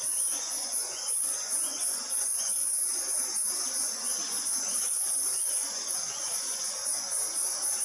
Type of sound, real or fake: fake